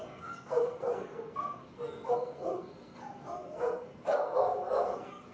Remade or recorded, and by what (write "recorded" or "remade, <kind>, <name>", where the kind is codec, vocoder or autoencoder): remade, codec, SNAC